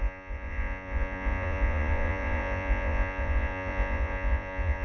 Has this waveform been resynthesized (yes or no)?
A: yes